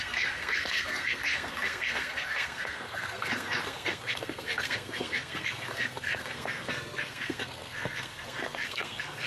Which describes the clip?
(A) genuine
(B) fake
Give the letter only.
B